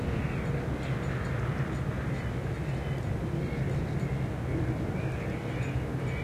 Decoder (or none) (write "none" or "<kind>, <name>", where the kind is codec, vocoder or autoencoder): none